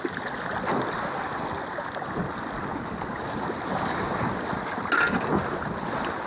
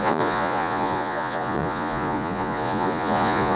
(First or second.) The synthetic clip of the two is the second